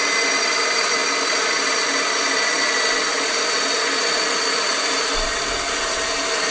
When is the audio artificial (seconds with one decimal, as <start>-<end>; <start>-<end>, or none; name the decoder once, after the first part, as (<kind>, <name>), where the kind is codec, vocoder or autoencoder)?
none